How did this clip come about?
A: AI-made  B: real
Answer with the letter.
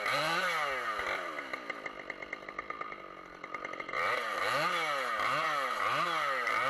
B